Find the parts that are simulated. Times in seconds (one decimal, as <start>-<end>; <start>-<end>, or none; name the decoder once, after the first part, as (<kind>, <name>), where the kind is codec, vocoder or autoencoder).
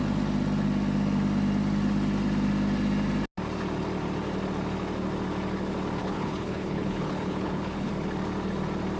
6.0-7.9 (codec, HILCodec)